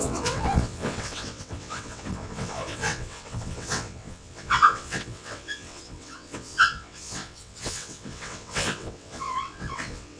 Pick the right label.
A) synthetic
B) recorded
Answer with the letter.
A